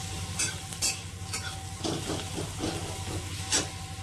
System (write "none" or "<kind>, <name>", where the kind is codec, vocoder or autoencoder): none